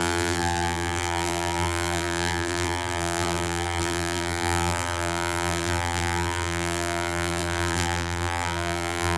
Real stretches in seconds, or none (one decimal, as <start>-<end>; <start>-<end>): none